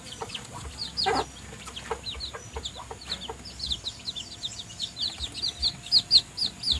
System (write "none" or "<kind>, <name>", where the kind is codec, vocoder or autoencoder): none